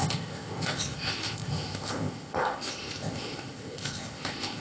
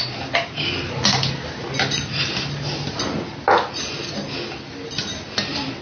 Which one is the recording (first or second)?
second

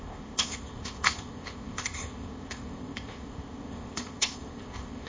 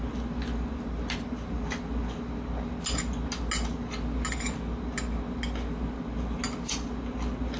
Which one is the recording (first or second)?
second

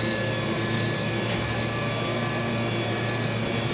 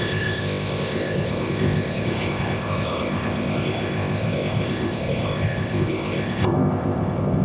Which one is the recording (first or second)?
first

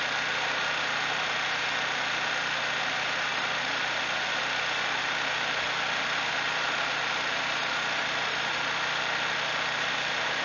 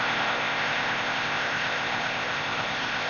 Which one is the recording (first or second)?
first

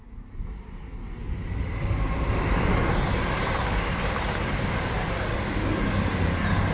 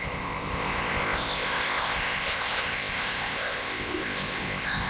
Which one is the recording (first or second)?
first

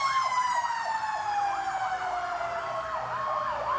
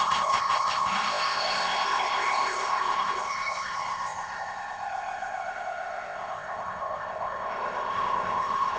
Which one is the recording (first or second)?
first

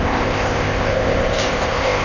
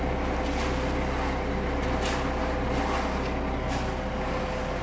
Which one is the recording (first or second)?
second